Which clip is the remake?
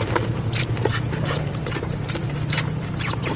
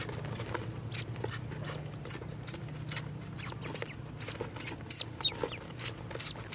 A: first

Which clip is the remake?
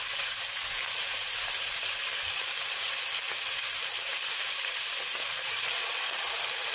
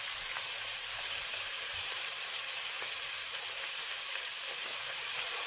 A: second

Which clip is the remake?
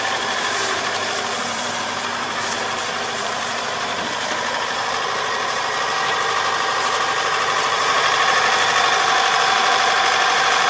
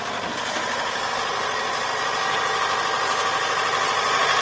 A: first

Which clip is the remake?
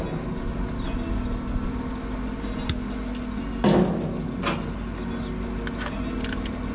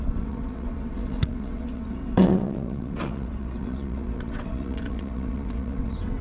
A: second